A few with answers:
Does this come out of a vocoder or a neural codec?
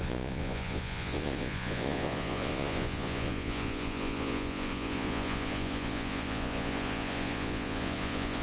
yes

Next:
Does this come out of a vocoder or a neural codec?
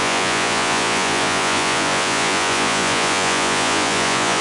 yes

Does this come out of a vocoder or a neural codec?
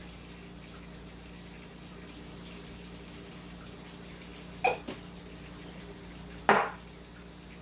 no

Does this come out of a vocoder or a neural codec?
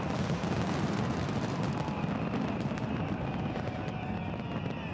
no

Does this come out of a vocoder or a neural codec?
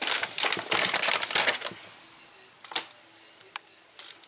no